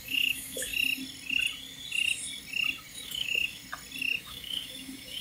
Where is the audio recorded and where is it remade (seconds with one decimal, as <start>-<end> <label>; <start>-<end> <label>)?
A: 0.0-0.7 remade; 0.7-2.9 recorded; 2.9-3.6 remade; 3.6-4.2 recorded; 4.2-5.2 remade